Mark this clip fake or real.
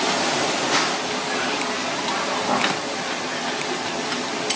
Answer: real